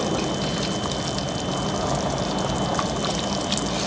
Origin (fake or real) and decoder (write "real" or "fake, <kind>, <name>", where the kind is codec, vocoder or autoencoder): real